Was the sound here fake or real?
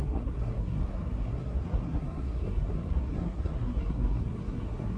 fake